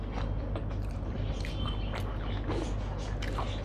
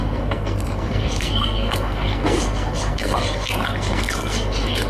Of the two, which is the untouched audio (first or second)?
first